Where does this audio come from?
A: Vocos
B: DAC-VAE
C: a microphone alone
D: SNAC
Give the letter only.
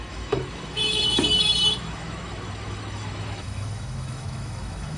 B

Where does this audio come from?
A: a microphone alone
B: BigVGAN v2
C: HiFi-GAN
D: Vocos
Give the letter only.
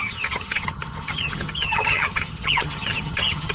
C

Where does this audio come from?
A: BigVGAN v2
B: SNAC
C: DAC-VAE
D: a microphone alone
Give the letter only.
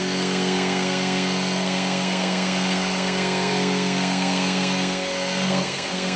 B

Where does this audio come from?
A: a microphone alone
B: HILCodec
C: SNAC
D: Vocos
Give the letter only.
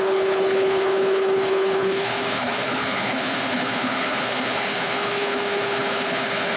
B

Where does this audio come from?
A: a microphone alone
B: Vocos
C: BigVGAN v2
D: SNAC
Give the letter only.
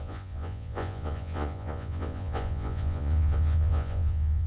B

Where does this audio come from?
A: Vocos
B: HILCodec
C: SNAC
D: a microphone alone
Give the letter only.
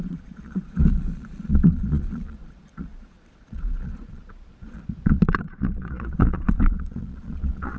A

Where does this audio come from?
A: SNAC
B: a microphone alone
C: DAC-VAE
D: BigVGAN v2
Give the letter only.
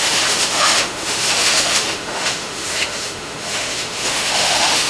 C